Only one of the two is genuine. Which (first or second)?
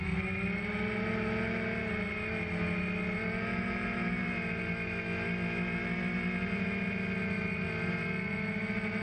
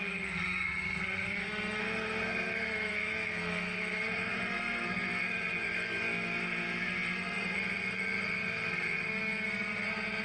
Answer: first